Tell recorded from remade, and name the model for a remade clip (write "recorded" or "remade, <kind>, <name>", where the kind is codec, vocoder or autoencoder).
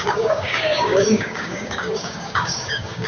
remade, codec, DAC